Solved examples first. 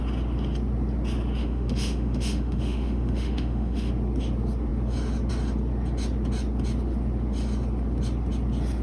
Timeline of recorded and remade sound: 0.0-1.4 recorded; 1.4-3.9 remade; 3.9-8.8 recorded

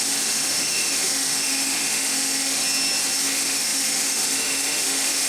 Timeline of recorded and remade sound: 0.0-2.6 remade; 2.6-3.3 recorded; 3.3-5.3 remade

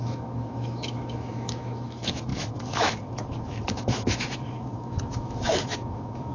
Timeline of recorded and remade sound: 0.0-6.3 remade

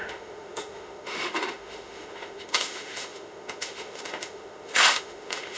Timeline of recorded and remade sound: 0.0-5.6 remade

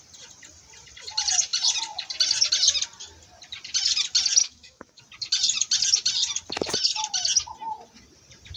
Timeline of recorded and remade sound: 0.0-4.4 recorded; 4.4-5.0 remade; 5.0-8.6 recorded

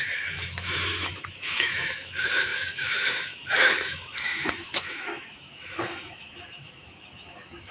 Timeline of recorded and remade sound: 0.0-7.7 remade

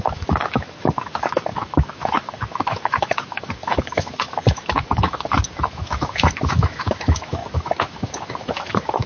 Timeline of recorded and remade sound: 0.0-9.1 remade

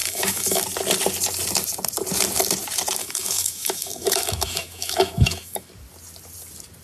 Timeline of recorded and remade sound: 0.0-0.6 remade; 0.6-3.0 recorded; 3.0-5.7 remade; 5.7-6.8 recorded